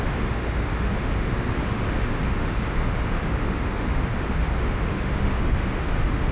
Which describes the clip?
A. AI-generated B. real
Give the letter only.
A